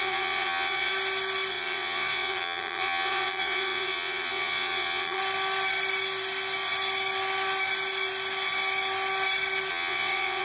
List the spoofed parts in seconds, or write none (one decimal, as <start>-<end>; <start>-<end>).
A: 0.0-0.9; 1.5-5.2; 9.7-10.4